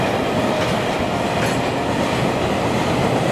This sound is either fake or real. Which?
real